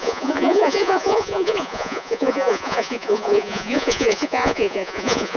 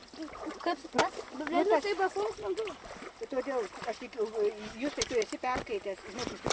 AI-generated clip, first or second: first